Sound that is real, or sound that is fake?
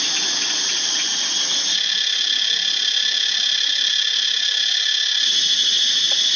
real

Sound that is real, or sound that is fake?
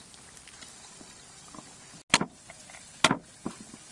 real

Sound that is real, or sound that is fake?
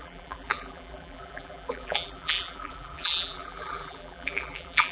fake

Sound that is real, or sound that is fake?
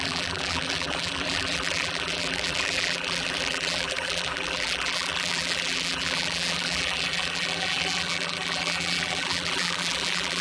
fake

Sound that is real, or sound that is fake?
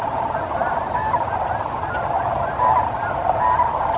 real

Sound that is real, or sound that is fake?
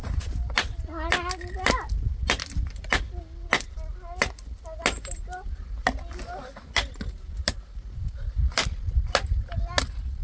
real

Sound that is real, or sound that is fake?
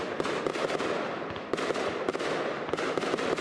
real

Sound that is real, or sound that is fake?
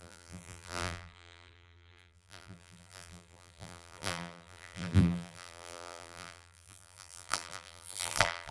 fake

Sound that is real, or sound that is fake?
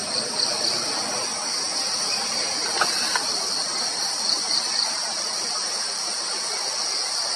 fake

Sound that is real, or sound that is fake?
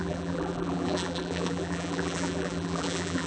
fake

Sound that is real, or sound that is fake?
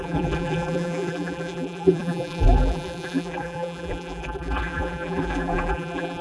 fake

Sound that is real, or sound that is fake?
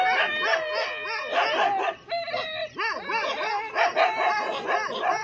real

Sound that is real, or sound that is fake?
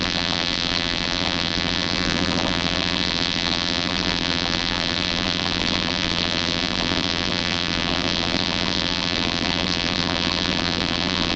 fake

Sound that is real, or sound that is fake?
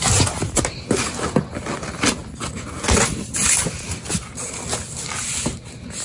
real